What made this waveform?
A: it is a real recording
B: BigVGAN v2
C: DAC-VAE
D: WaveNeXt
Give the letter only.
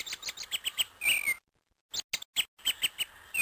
A